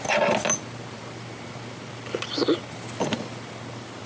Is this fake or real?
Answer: real